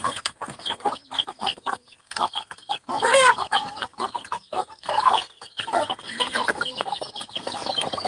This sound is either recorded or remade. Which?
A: remade